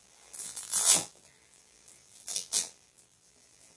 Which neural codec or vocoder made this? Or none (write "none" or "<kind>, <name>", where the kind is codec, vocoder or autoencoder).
vocoder, BigVGAN v2